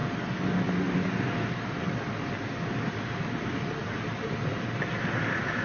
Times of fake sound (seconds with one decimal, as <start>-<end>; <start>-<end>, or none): none